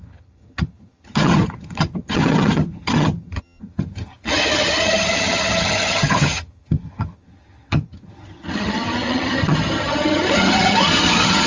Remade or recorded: remade